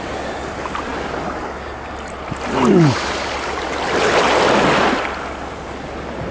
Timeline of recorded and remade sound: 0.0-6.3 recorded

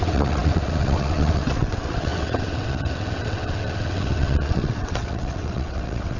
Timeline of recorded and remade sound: 0.0-6.2 remade

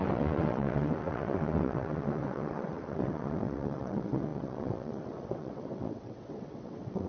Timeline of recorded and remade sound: 0.0-7.1 remade

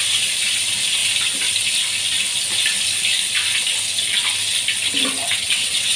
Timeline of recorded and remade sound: 0.0-5.2 recorded; 5.2-6.0 remade

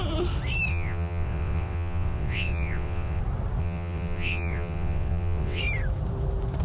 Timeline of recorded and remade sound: 0.0-0.7 recorded; 0.7-3.2 remade; 3.2-3.6 recorded; 3.6-5.6 remade; 5.6-6.6 recorded

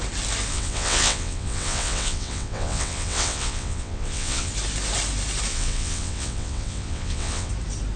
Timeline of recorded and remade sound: 0.0-0.5 recorded; 0.5-4.5 remade; 4.5-5.5 recorded; 5.5-7.5 remade; 7.5-8.0 recorded